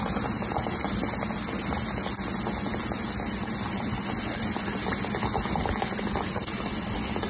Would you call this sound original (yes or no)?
yes